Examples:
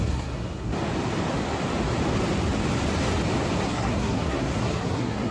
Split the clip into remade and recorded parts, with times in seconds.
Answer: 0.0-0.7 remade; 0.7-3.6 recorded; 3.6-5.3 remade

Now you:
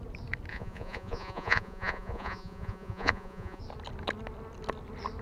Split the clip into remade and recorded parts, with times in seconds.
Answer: 0.0-0.5 recorded; 0.5-3.6 remade; 3.6-5.2 recorded

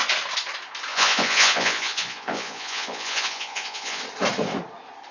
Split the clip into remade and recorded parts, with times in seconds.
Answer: 0.0-0.9 recorded; 0.9-4.0 remade; 4.0-5.1 recorded